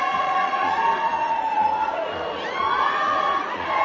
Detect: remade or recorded remade